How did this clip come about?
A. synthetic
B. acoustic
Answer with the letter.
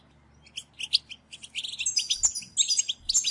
B